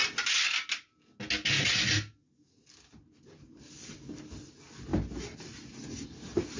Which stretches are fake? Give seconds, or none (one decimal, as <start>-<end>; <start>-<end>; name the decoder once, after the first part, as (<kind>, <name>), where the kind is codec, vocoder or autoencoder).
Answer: none

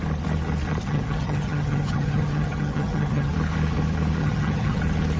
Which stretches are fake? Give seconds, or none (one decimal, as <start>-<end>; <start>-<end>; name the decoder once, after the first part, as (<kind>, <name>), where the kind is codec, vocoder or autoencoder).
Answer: 0.8-3.3 (vocoder, HiFi-GAN); 4.2-4.8

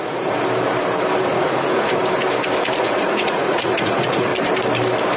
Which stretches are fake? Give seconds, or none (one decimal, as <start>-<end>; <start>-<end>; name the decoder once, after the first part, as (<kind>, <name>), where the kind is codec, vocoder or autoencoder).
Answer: 0.0-0.4 (vocoder, Vocos); 1.3-2.0; 2.8-4.3

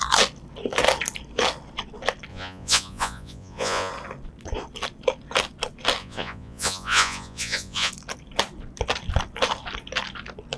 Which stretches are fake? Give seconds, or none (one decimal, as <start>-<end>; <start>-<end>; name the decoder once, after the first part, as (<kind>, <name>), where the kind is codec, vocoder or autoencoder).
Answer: 2.3-3.9 (vocoder, Vocos); 6.0-7.9

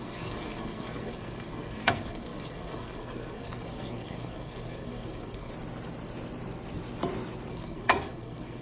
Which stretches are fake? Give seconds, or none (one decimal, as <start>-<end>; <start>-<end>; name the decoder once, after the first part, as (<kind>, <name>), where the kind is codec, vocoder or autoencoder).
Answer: 0.0-5.5 (codec, SNAC); 7.5-8.6

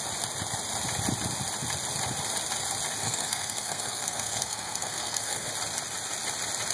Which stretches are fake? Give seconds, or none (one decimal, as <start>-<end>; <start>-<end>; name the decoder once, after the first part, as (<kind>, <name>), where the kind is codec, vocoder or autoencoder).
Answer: 3.0-5.5 (codec, SNAC)